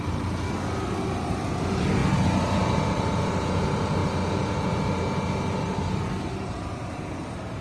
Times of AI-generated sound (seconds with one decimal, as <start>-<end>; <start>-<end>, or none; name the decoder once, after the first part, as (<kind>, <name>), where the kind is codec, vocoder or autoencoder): none